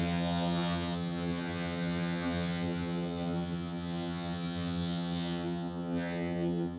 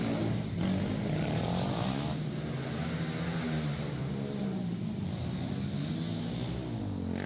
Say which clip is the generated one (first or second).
first